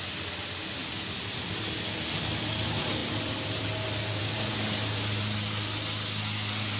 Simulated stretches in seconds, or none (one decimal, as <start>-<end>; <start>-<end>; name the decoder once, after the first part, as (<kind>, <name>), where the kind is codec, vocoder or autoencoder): none